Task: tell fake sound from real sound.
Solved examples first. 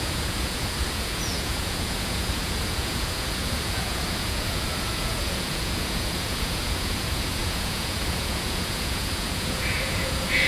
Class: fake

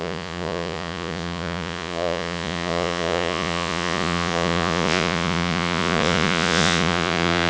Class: fake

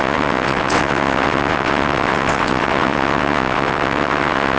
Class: fake